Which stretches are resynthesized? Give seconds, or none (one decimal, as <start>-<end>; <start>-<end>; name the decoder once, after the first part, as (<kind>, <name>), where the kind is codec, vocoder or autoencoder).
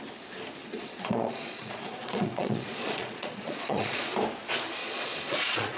0.6-4.1 (vocoder, Vocos); 4.8-5.8